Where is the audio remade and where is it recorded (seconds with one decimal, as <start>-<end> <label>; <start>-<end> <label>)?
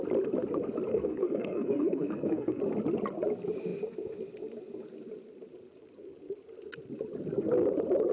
0.0-0.9 recorded; 0.9-2.6 remade; 2.6-8.1 recorded